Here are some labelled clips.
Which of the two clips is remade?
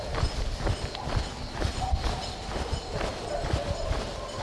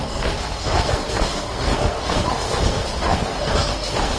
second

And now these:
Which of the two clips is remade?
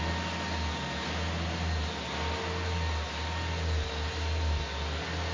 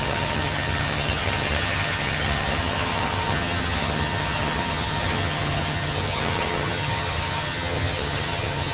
second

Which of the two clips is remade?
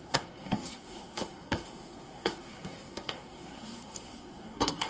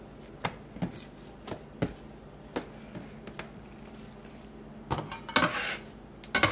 first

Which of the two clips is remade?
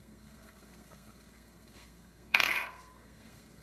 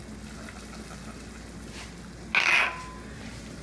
first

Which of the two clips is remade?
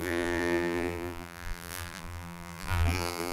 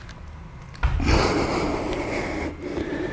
first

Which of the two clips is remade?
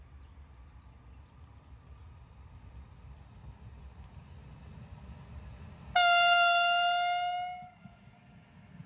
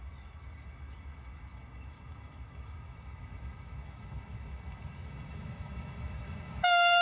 second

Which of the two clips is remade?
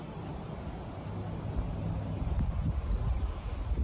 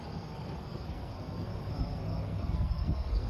second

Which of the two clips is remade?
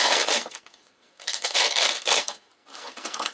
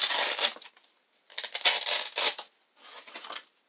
first